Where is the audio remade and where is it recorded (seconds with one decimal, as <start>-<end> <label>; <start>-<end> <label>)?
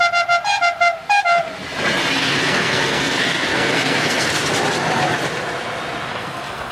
0.0-2.2 recorded; 2.2-4.3 remade; 4.3-6.1 recorded; 6.1-6.7 remade